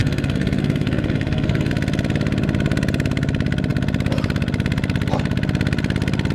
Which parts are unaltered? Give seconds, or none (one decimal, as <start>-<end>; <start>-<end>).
1.7-6.3